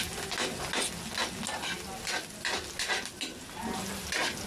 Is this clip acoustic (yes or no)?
yes